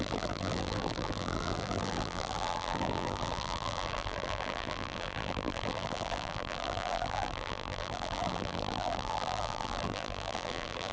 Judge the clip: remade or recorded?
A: remade